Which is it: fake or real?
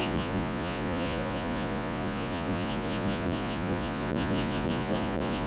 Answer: fake